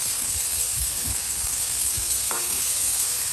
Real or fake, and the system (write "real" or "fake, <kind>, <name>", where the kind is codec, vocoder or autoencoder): fake, codec, SNAC